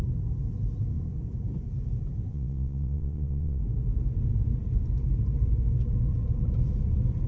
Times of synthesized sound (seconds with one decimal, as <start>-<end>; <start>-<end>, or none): 2.3-3.6